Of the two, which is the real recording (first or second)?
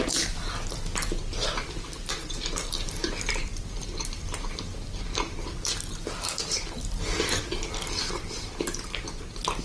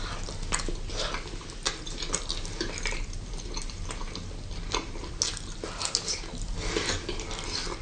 second